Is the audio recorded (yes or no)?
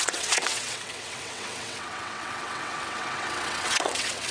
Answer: no